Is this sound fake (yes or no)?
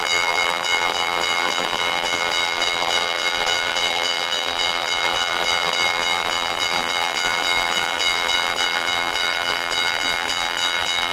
yes